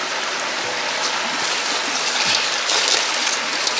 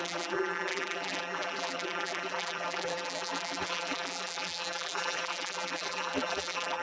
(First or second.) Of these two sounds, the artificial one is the second